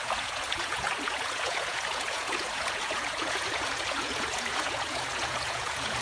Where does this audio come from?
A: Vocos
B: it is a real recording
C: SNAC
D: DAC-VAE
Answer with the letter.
A